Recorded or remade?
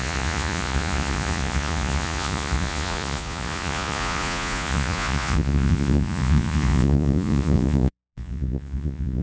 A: remade